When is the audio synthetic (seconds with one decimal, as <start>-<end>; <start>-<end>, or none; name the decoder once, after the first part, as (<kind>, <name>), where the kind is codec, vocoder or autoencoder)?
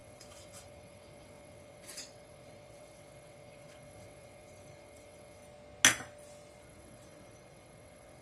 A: 0.0-5.4 (vocoder, WaveNeXt); 6.6-8.2